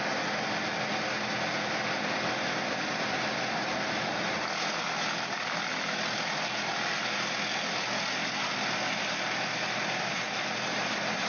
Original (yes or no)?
yes